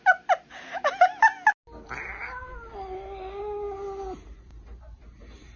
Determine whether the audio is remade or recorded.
recorded